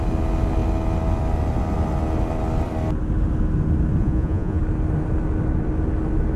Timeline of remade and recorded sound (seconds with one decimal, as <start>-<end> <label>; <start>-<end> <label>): 0.0-4.0 recorded; 4.0-4.6 remade; 4.6-6.4 recorded